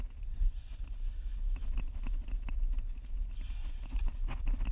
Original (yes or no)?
yes